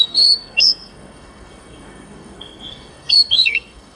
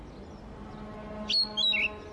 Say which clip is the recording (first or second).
second